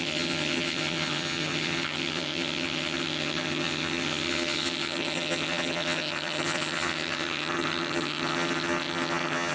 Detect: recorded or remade remade